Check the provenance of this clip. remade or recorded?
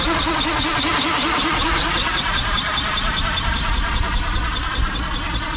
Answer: recorded